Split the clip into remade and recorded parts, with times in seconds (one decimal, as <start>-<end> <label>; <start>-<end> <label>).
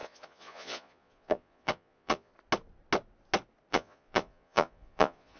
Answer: 0.0-2.3 remade; 2.3-3.7 recorded; 3.7-5.4 remade